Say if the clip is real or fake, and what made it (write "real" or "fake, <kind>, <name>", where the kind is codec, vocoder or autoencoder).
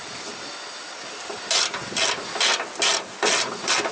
real